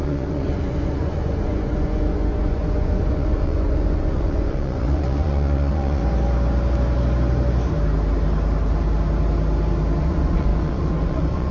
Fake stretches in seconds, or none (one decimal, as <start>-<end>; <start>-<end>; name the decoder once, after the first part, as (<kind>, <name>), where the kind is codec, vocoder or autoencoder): 0.0-6.0 (vocoder, Vocos); 10.0-11.5

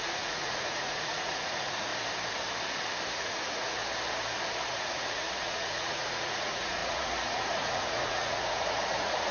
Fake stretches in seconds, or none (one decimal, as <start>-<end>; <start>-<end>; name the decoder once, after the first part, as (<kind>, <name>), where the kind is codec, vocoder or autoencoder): 0.0-1.9 (vocoder, Vocos); 3.1-3.8; 4.7-9.3

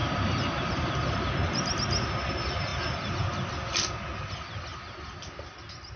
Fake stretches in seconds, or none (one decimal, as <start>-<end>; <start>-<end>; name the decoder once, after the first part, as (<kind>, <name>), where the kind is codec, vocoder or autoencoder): none

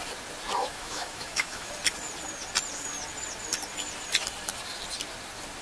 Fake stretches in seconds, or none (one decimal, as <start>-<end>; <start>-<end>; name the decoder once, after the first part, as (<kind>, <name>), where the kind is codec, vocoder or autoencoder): 0.6-1.7 (autoencoder, DAC-VAE)